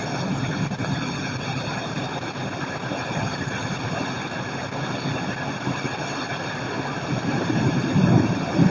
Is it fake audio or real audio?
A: real